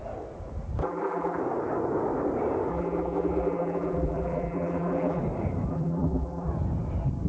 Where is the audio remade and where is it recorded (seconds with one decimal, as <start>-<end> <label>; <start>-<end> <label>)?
0.0-0.8 recorded; 0.8-1.4 remade; 1.4-2.7 recorded; 2.7-5.2 remade; 5.2-5.7 recorded; 5.7-6.5 remade; 6.5-7.3 recorded